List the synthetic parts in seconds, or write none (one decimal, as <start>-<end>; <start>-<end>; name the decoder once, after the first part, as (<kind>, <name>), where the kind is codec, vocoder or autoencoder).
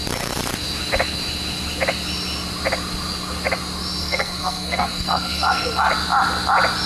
4.0-5.9 (codec, SNAC)